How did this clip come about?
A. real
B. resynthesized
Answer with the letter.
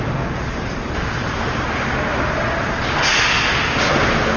A